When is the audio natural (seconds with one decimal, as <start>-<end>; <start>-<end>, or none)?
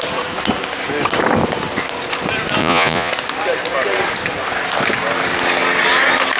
0.0-2.6; 3.1-6.4